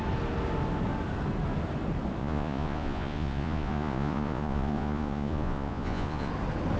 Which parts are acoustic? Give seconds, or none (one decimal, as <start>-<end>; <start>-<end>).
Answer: 0.0-2.2; 6.3-6.8